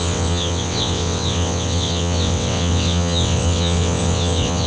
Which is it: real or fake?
fake